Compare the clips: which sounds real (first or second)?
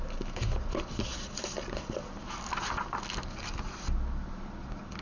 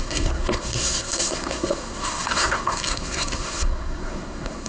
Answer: first